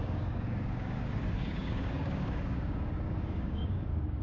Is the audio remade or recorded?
remade